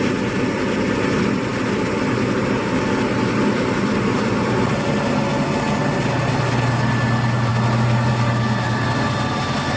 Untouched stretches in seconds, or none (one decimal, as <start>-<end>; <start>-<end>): 0.0-9.8